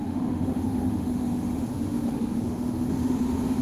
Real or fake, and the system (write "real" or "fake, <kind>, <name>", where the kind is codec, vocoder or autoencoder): fake, autoencoder, DAC-VAE